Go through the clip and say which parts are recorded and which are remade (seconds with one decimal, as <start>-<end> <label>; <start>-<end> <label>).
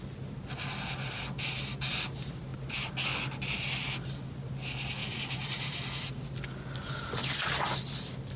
0.0-5.0 recorded; 5.0-5.8 remade; 5.8-7.2 recorded; 7.2-7.7 remade; 7.7-8.4 recorded